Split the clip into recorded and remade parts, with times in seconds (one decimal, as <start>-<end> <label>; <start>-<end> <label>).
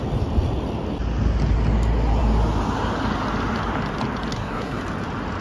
0.0-4.3 recorded; 4.3-4.8 remade; 4.8-5.4 recorded